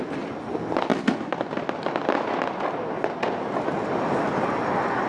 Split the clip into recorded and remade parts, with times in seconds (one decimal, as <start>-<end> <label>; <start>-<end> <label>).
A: 0.0-5.1 recorded